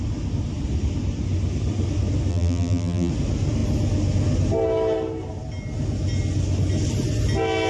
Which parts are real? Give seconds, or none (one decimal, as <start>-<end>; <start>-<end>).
0.0-2.3; 3.1-7.7